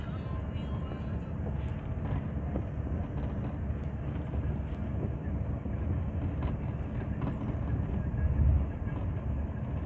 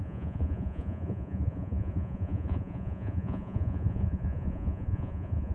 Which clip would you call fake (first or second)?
second